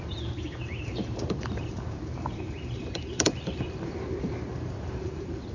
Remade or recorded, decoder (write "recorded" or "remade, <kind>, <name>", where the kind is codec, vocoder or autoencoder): remade, vocoder, BigVGAN v2